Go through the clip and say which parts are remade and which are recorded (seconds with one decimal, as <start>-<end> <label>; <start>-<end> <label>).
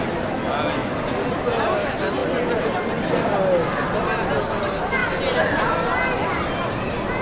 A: 0.0-7.2 recorded